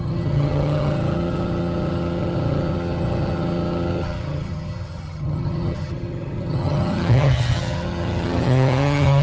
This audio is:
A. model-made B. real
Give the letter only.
A